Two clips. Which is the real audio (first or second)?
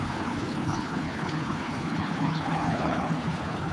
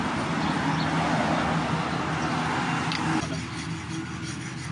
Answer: second